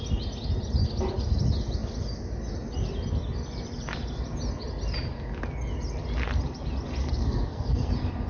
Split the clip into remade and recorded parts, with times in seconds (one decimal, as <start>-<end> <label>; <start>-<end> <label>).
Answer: 0.0-7.0 recorded; 7.0-7.9 remade; 7.9-8.3 recorded